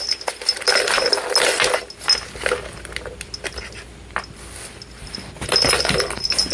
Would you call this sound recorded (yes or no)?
yes